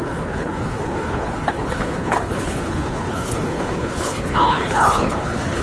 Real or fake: fake